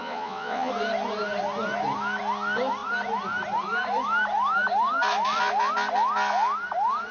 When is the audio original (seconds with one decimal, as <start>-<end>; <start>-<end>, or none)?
0.7-7.1